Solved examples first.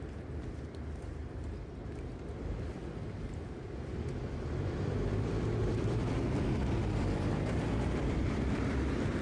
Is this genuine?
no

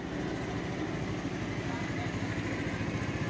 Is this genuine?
yes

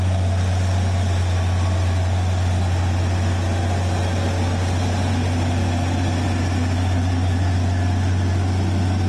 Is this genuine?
yes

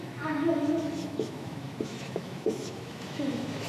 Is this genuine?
no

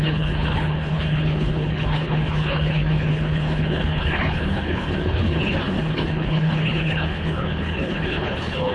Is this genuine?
no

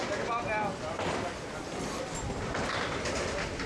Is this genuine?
yes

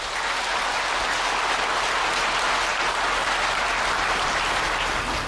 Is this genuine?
yes